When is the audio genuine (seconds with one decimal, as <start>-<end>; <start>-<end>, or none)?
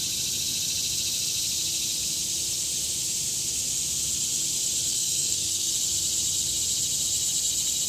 0.0-4.9; 5.7-7.9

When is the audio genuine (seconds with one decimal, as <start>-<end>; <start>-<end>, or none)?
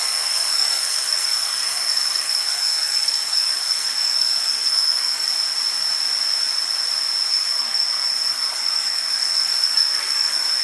5.3-7.3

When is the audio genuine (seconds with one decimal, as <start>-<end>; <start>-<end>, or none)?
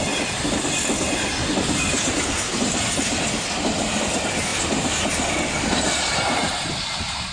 0.0-7.3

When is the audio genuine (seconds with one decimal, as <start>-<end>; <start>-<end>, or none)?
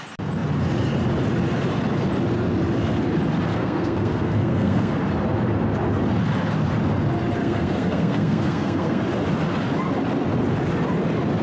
0.0-3.5; 4.9-7.4; 9.0-11.4